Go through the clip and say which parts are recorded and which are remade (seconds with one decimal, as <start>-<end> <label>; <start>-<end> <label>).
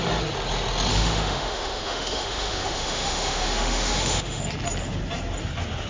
0.0-0.9 recorded; 0.9-4.4 remade; 4.4-5.9 recorded